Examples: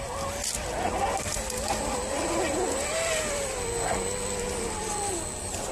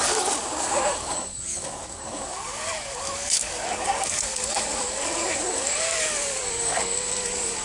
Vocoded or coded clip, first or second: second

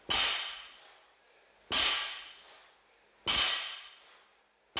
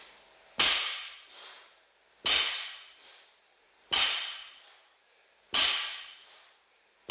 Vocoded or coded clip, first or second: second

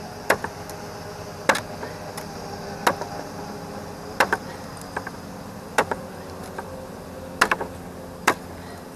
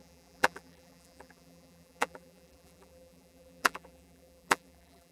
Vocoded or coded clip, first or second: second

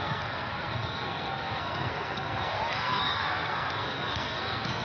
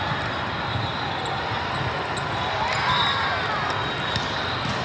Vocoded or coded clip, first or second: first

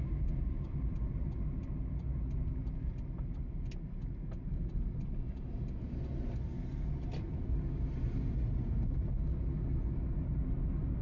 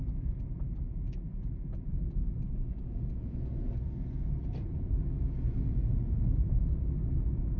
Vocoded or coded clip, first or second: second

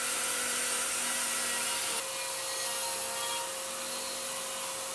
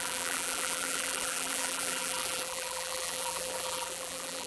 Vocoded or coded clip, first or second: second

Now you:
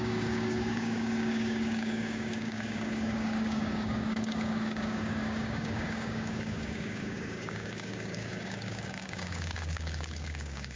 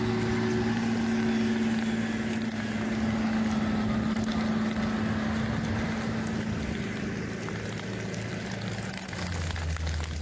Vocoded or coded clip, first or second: first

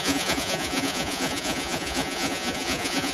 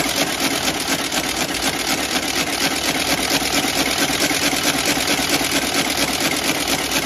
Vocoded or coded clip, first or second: first